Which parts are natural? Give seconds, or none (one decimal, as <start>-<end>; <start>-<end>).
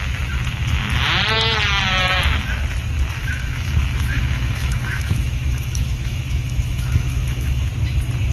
0.0-3.2; 7.7-8.3